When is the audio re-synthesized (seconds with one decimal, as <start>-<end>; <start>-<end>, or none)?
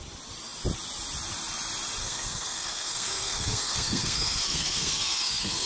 2.0-5.7